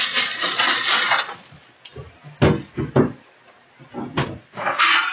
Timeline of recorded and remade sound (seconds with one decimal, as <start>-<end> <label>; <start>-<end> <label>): 0.0-5.1 recorded